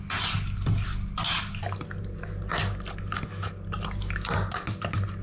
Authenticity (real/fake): real